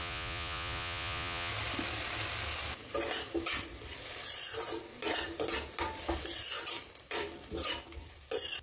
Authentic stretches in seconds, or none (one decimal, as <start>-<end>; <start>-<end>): 1.5-8.6